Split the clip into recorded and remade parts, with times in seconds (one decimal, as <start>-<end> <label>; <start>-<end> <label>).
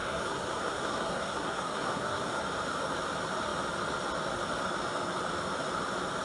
0.0-2.4 remade; 2.4-6.2 recorded